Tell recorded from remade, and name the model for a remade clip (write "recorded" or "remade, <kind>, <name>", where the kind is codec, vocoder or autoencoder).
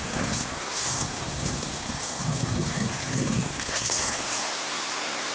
remade, codec, SNAC